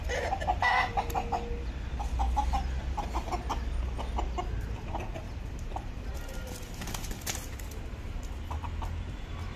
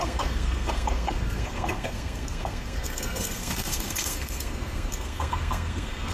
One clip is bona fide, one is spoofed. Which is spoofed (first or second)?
second